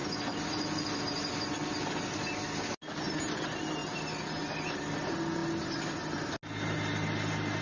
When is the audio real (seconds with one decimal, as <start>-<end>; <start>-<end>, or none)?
0.0-7.6